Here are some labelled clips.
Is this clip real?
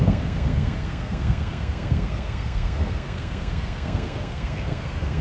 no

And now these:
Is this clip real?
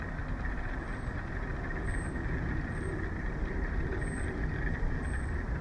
yes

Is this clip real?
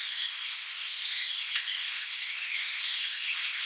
no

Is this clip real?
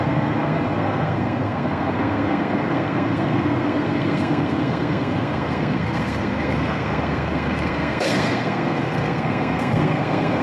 no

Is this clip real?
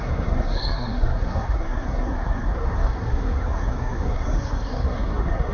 no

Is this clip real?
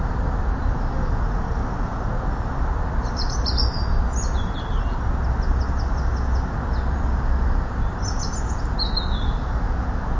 yes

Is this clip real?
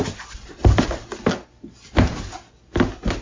yes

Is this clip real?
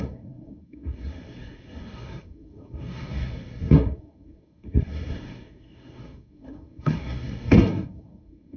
no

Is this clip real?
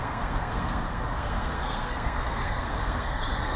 no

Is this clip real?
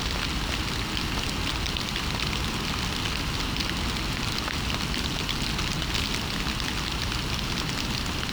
yes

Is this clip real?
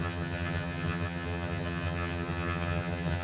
no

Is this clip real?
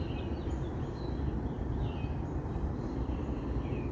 yes